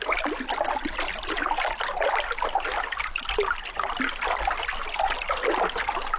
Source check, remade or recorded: recorded